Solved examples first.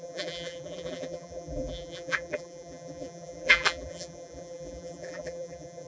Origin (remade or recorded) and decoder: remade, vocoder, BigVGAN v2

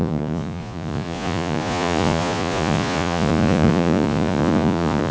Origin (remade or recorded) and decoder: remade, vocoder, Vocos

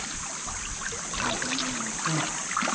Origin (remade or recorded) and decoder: recorded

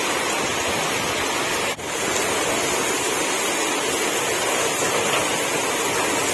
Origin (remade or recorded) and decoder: recorded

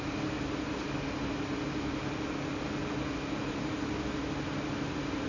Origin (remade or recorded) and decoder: recorded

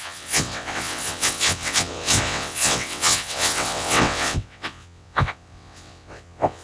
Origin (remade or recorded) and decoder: remade, vocoder, WaveNeXt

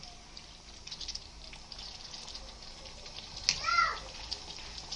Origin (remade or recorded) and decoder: recorded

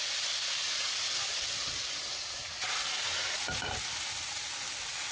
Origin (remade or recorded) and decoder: recorded